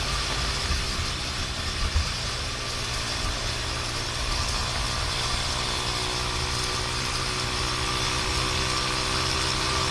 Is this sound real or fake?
real